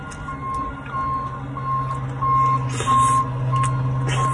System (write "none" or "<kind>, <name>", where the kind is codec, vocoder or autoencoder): none